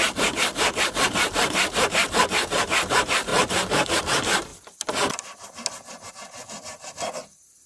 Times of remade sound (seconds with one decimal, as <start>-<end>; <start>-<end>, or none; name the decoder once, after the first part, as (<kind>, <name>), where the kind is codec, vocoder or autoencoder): 0.8-4.5 (vocoder, BigVGAN v2); 6.1-7.7